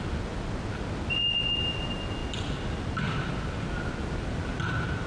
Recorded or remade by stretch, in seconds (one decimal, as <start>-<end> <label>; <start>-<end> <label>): 0.0-5.1 recorded